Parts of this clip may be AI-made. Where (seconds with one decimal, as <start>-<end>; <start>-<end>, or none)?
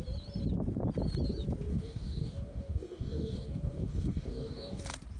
1.7-4.8